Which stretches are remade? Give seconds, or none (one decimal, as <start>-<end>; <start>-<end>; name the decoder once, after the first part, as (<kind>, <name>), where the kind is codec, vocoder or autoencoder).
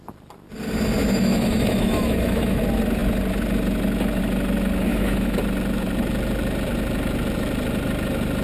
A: 1.0-2.6 (autoencoder, DAC-VAE); 4.9-5.4